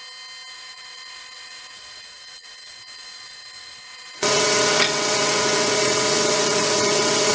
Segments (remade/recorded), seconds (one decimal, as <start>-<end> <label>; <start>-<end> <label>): 0.0-0.5 recorded; 0.5-7.3 remade